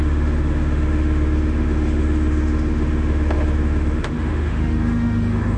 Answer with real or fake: fake